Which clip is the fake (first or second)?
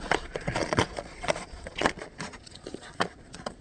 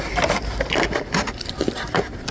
first